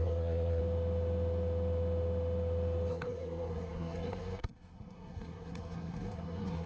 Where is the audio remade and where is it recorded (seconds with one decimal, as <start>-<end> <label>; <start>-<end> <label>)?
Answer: 0.0-0.6 remade; 0.6-2.9 recorded; 2.9-6.7 remade